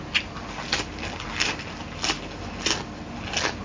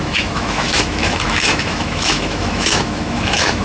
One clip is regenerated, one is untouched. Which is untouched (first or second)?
first